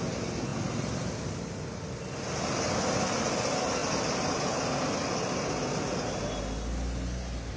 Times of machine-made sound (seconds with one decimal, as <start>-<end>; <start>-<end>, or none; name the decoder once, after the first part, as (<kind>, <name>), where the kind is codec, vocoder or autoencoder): none